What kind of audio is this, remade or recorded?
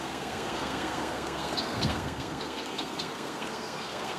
remade